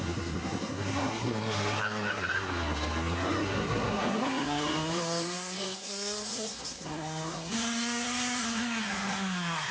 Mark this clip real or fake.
fake